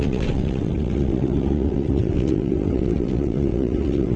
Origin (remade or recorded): remade